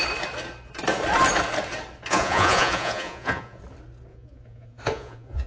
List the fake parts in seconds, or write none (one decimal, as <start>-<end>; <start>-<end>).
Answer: 2.1-3.6; 4.1-5.5